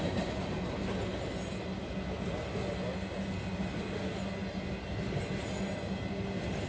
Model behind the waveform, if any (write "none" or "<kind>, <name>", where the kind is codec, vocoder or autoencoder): none